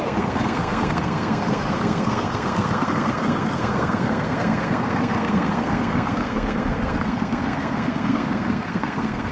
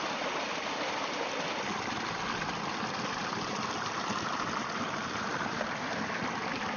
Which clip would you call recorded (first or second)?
second